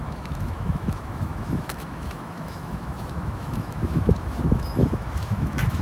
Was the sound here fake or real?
fake